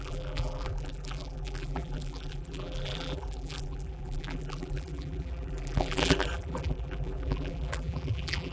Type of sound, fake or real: fake